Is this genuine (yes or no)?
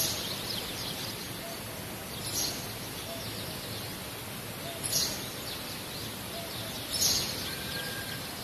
yes